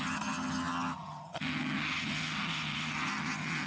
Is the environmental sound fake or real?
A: fake